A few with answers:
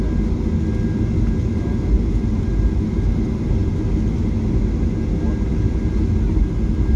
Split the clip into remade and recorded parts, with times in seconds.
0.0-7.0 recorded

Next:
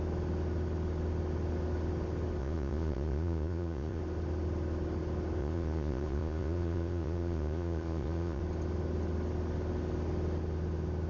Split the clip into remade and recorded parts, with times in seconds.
0.0-2.4 recorded; 2.4-4.0 remade; 4.0-5.4 recorded; 5.4-8.4 remade; 8.4-11.1 recorded

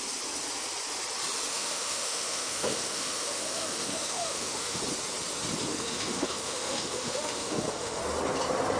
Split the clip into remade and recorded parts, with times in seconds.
0.0-1.5 recorded; 1.5-4.8 remade; 4.8-5.7 recorded; 5.7-8.0 remade; 8.0-8.8 recorded

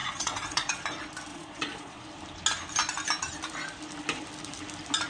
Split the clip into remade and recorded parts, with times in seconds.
0.0-0.8 remade; 0.8-1.3 recorded; 1.3-2.1 remade; 2.1-5.1 recorded

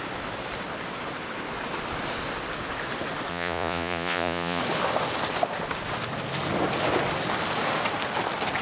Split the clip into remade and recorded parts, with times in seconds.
0.0-3.3 recorded; 3.3-4.6 remade; 4.6-8.6 recorded